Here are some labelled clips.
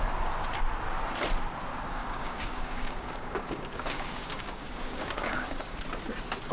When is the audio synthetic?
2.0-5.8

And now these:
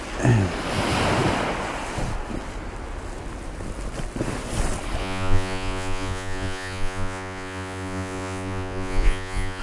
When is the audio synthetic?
5.0-9.6

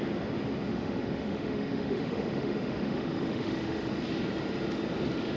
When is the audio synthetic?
0.7-3.9

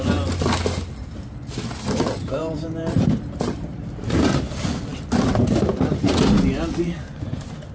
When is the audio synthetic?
2.2-4.2

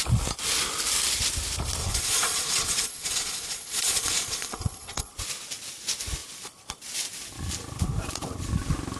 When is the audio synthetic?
1.8-5.1

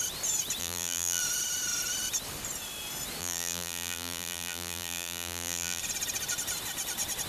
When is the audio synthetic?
0.6-1.2; 3.2-5.8

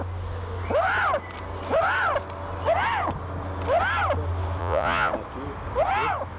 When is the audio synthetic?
4.6-5.1